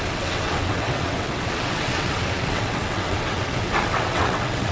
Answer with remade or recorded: remade